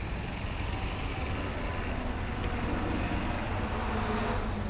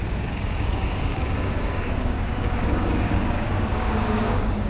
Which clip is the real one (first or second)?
first